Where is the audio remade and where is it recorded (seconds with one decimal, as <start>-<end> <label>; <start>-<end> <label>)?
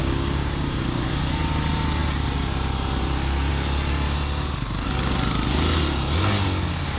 0.0-1.3 remade; 1.3-7.0 recorded